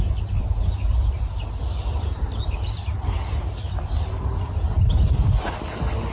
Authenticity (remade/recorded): recorded